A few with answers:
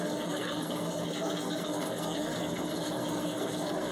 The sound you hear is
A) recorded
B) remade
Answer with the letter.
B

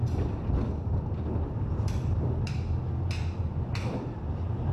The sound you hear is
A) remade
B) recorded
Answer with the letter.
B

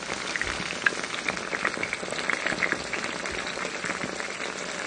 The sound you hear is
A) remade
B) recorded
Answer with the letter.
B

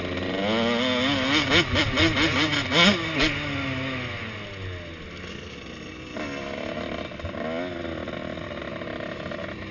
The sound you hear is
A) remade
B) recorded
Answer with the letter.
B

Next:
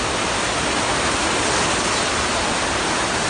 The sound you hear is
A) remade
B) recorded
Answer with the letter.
B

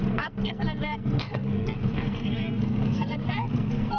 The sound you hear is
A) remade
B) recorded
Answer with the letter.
A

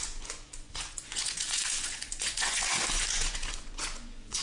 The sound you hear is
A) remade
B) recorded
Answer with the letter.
A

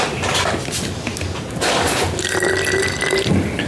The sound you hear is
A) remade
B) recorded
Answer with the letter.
B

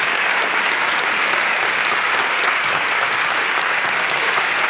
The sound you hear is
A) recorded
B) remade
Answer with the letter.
B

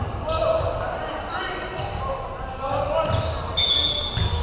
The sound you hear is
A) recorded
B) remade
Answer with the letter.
A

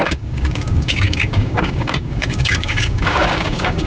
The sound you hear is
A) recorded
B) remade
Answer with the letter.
B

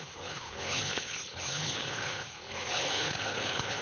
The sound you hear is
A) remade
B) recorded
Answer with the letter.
A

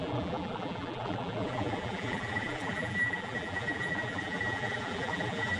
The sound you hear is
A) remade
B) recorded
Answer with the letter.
A